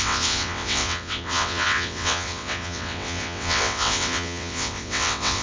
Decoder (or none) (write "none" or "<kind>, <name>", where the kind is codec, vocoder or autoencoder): vocoder, WaveNeXt